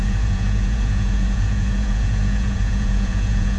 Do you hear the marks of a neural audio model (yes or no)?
yes